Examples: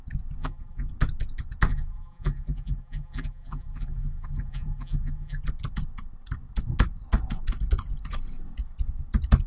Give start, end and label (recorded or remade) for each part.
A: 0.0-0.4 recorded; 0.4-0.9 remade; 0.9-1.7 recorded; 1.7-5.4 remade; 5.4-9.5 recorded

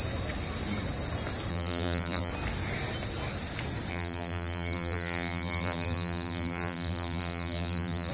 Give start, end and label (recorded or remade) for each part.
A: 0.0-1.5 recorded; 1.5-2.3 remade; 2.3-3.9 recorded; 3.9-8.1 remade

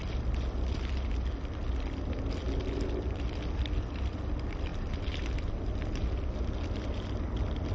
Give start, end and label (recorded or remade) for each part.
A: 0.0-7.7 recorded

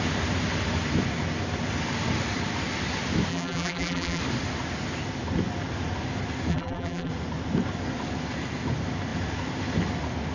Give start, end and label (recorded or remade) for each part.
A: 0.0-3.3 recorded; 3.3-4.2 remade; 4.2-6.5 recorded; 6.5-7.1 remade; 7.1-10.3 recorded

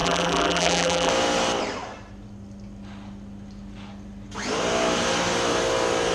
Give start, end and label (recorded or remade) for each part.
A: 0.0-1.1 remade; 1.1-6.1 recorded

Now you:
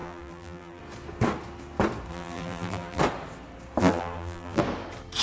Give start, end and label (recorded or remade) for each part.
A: 0.0-0.8 remade; 0.8-2.1 recorded; 2.1-3.0 remade; 3.0-3.8 recorded; 3.8-4.6 remade; 4.6-5.2 recorded